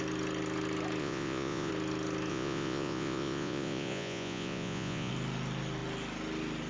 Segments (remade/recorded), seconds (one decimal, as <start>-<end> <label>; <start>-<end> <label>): 0.0-1.0 recorded; 1.0-1.7 remade; 1.7-2.3 recorded; 2.3-5.1 remade; 5.1-6.7 recorded